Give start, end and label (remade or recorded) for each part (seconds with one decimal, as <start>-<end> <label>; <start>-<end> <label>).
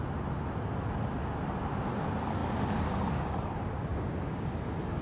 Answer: 0.0-3.9 recorded; 3.9-4.5 remade; 4.5-5.0 recorded